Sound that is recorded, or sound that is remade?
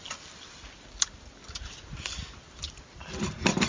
recorded